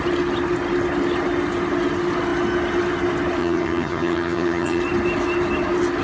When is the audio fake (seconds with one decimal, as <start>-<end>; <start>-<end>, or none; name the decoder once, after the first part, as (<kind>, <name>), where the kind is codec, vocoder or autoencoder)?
3.4-4.8 (vocoder, HiFi-GAN)